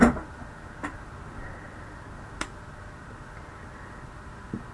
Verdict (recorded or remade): recorded